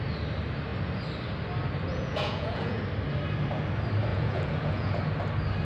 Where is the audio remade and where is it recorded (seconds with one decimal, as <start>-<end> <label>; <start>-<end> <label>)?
0.0-1.9 recorded; 1.9-2.8 remade; 2.8-4.1 recorded; 4.1-5.0 remade; 5.0-5.6 recorded